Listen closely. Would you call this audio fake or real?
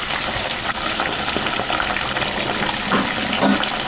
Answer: real